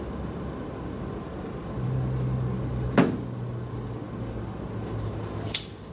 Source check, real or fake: real